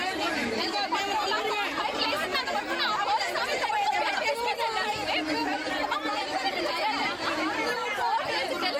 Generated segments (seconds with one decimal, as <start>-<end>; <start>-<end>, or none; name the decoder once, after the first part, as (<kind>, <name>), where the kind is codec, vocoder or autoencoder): 0.0-4.0 (vocoder, BigVGAN v2); 5.4-8.3